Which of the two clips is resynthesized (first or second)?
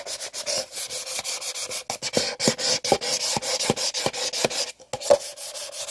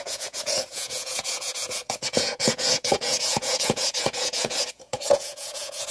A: second